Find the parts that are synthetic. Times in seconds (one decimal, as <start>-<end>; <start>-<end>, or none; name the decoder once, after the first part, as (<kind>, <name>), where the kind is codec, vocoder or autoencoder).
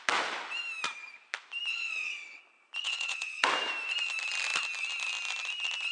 1.7-2.4 (vocoder, WaveNeXt); 2.8-3.5